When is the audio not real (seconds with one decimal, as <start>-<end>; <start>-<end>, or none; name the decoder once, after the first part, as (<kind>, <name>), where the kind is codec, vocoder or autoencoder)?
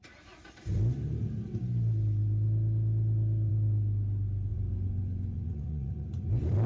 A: 4.5-6.3 (vocoder, Vocos)